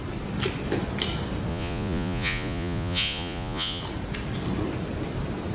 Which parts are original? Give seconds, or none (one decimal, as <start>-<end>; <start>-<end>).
0.0-1.5; 3.8-5.5

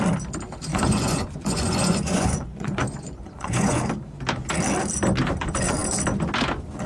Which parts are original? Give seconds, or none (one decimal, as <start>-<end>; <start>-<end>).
0.0-0.7; 3.8-6.9

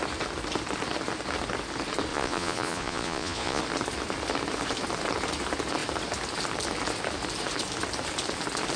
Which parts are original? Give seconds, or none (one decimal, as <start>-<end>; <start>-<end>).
0.0-2.1; 3.6-8.8

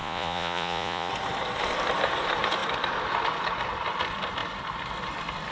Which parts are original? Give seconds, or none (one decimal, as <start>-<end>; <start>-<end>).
1.1-5.5

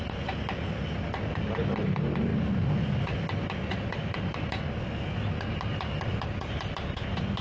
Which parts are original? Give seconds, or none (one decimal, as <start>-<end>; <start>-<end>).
0.0-7.4

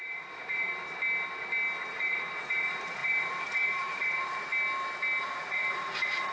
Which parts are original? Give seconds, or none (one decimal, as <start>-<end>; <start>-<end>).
0.7-1.9; 4.5-5.2